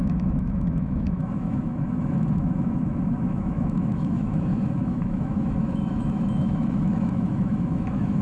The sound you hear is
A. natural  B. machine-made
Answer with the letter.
B